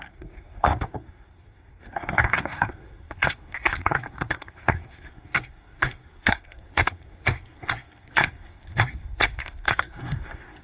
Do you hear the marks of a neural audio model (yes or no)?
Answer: yes